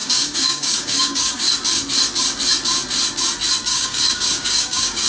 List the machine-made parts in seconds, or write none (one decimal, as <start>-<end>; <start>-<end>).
0.0-1.5; 3.7-5.1